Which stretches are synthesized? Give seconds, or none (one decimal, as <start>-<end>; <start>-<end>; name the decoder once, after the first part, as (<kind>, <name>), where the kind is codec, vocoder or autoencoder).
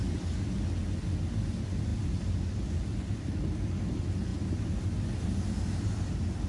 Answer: none